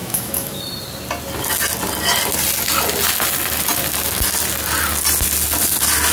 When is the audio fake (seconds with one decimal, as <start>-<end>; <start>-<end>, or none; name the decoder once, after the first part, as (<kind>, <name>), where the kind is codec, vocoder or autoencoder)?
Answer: 0.0-0.6 (autoencoder, DAC-VAE)